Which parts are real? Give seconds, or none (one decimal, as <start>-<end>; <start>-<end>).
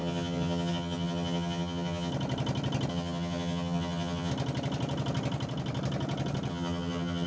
2.1-2.9; 4.3-6.5